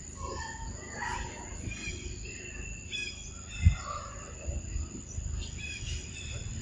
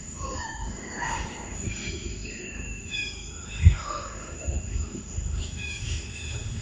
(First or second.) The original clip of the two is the first